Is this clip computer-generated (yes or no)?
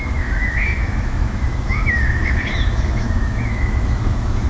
yes